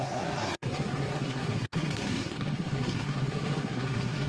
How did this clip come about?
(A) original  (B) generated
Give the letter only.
B